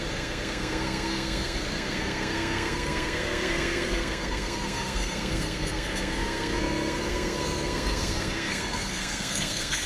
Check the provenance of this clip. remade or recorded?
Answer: remade